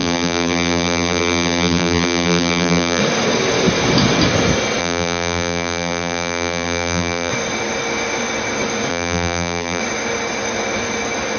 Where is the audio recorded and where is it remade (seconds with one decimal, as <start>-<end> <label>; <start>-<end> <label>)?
0.0-3.0 remade; 3.0-4.8 recorded; 4.8-7.3 remade; 7.3-8.9 recorded; 8.9-9.8 remade; 9.8-11.4 recorded